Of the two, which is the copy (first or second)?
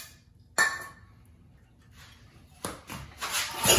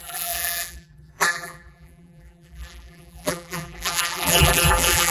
second